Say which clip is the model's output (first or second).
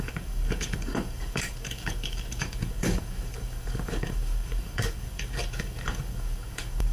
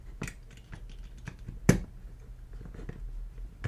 first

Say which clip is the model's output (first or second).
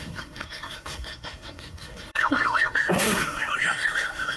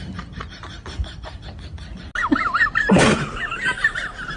first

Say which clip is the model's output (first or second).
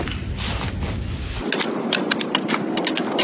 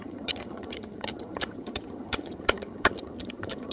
second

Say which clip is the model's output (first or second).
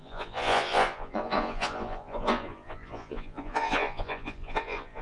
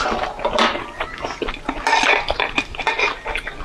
first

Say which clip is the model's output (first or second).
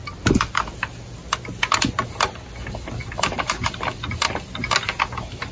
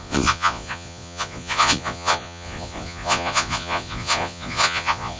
second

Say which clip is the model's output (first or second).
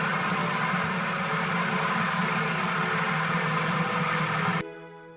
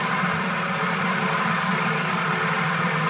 second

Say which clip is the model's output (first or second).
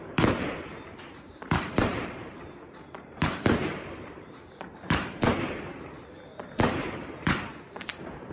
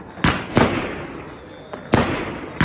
first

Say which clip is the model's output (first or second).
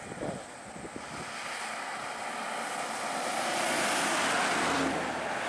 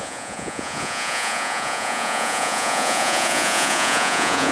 second